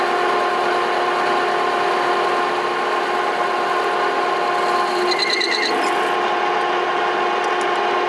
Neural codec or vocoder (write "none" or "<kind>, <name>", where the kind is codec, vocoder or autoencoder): none